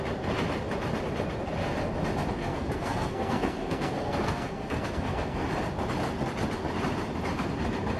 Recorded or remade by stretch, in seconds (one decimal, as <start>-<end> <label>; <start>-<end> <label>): 0.0-2.4 recorded; 2.4-5.5 remade; 5.5-8.0 recorded